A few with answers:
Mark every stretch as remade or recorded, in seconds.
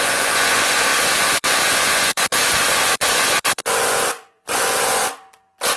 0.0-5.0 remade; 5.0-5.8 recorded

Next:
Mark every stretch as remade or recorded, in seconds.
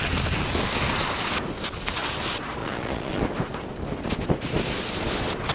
0.0-2.6 recorded; 2.6-3.2 remade; 3.2-5.5 recorded